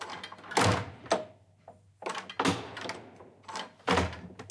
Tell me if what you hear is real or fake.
real